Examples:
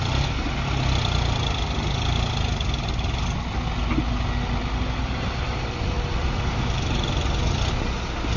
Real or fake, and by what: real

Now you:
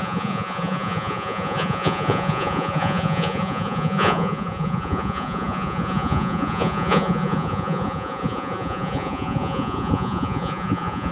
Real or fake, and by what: fake, vocoder, Vocos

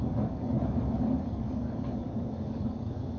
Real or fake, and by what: fake, codec, DAC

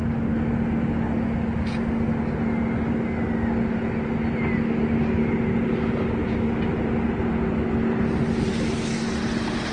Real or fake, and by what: real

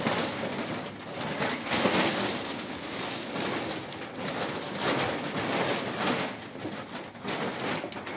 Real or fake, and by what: real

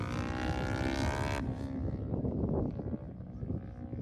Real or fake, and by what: real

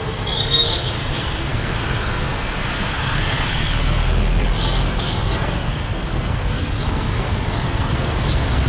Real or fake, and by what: fake, codec, SNAC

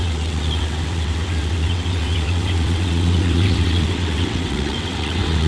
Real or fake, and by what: fake, vocoder, WaveNeXt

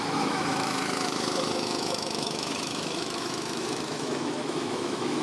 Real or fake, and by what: fake, autoencoder, DAC-VAE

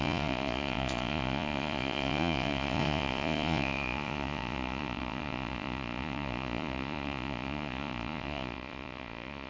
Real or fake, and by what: fake, vocoder, Vocos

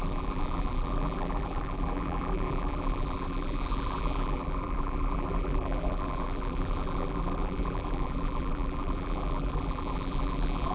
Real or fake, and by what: fake, vocoder, BigVGAN v2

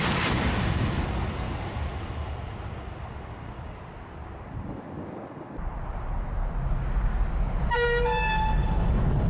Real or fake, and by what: real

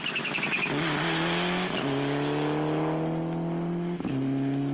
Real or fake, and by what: real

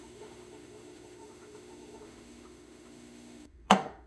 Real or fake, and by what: fake, autoencoder, DAC-VAE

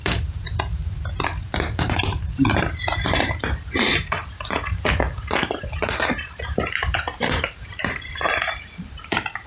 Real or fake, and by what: fake, vocoder, BigVGAN v2